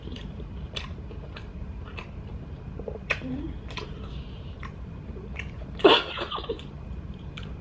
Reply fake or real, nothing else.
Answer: fake